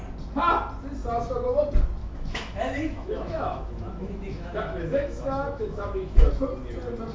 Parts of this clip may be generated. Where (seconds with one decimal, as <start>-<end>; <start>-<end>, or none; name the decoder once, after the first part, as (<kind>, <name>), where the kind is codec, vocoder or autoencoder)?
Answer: 2.0-6.3 (autoencoder, DAC-VAE)